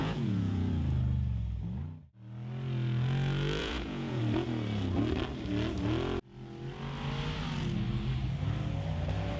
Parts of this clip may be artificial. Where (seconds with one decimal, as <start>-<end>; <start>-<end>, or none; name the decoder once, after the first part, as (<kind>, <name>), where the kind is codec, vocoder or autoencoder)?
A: 0.0-0.7 (vocoder, Vocos); 3.6-4.2